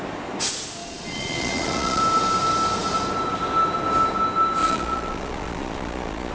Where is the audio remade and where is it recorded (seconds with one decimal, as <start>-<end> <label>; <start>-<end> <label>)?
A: 0.0-0.8 recorded; 0.8-2.0 remade; 2.0-4.6 recorded; 4.6-6.3 remade